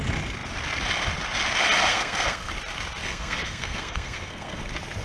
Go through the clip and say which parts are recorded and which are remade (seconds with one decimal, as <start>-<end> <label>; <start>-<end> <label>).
0.0-1.9 recorded; 1.9-2.5 remade; 2.5-3.0 recorded; 3.0-4.6 remade; 4.6-5.0 recorded